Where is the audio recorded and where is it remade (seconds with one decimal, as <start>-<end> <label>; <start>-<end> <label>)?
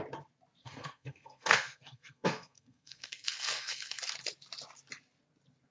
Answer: 0.0-0.6 recorded; 0.6-4.0 remade; 4.0-5.7 recorded